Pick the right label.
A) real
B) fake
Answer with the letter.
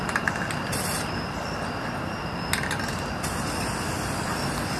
A